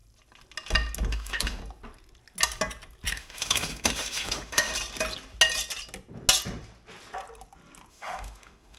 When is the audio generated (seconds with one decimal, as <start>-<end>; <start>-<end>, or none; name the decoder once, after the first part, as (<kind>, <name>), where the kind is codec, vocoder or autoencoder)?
1.1-1.6 (autoencoder, DAC-VAE); 3.1-4.7; 7.9-8.8